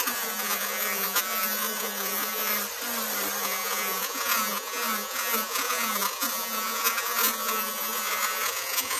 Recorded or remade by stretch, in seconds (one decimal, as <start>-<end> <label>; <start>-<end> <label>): 0.0-2.5 remade; 2.5-3.4 recorded; 3.4-9.0 remade